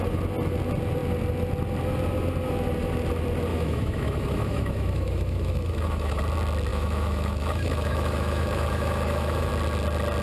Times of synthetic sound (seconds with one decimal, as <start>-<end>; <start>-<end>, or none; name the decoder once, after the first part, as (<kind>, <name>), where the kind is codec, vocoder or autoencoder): 3.5-6.2 (autoencoder, DAC-VAE); 6.7-9.5